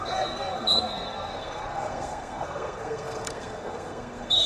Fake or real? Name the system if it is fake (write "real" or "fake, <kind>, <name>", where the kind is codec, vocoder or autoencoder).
fake, codec, SNAC